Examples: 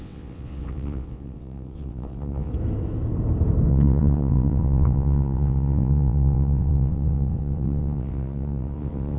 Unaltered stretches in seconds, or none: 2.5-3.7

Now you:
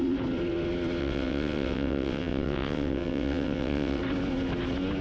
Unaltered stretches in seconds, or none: 0.0-1.0; 4.0-5.0

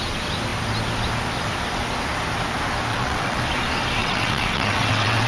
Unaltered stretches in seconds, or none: 0.0-2.9; 3.4-4.0

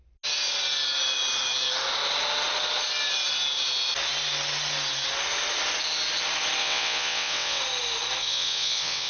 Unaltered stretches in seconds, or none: 0.0-6.6; 7.6-8.2

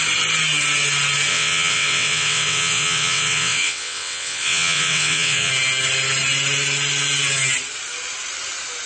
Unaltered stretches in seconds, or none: 0.0-1.3; 5.5-8.9

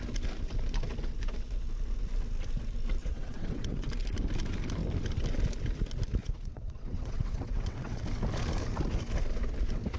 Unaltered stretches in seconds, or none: 0.0-3.0; 3.9-6.2; 8.0-10.0

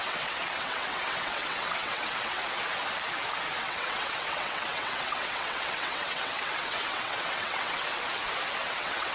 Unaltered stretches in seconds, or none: 2.4-3.6; 7.8-8.6

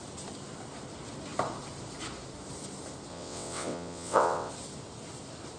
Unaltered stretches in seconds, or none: 0.0-3.1; 4.5-5.6